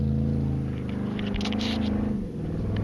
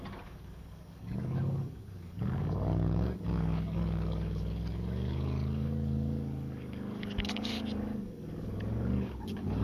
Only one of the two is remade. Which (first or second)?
second